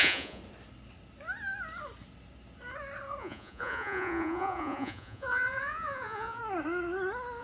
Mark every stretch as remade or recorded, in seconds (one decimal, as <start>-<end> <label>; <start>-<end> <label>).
0.0-0.4 remade; 0.4-3.2 recorded; 3.2-6.4 remade; 6.4-7.4 recorded